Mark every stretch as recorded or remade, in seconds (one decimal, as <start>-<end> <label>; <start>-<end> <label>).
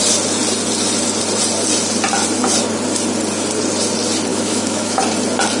0.0-4.3 recorded; 4.3-5.0 remade; 5.0-5.6 recorded